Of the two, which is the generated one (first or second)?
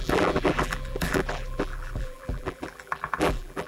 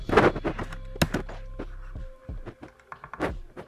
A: first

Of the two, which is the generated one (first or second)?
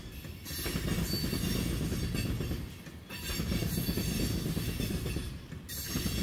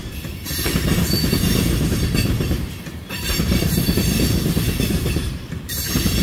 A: second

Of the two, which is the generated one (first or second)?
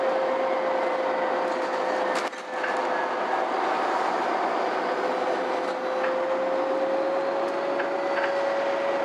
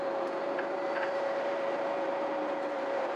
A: second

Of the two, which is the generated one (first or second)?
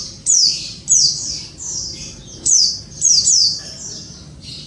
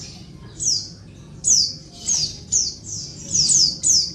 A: first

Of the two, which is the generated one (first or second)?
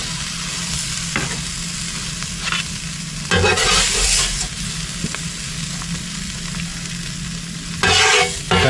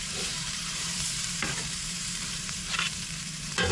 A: second